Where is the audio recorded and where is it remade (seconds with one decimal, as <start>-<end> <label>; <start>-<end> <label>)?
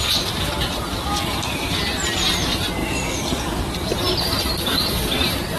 0.0-1.1 recorded; 1.1-1.6 remade; 1.6-2.8 recorded; 2.8-3.6 remade; 3.6-5.6 recorded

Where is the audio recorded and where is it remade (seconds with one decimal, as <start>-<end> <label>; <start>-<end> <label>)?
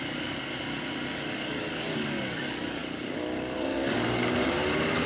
0.0-0.5 remade; 0.5-1.2 recorded; 1.2-5.1 remade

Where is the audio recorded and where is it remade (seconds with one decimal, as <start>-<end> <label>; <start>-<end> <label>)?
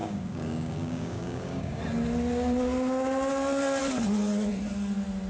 0.0-1.8 remade; 1.8-5.3 recorded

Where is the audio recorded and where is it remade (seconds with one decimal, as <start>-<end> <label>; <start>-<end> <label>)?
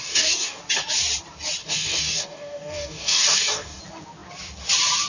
0.0-0.6 remade; 0.6-1.6 recorded; 1.6-3.8 remade; 3.8-5.1 recorded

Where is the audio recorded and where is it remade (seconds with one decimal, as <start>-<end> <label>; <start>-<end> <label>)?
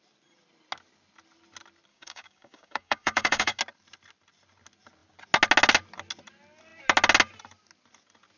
0.0-1.9 recorded; 1.9-3.6 remade; 3.6-8.4 recorded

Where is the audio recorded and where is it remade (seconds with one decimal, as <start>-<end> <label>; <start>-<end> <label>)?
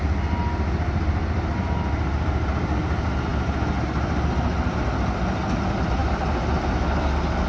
0.0-7.5 recorded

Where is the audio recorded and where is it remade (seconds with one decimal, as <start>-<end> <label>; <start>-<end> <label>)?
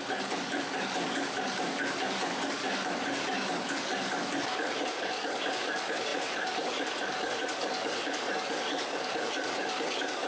0.0-10.3 remade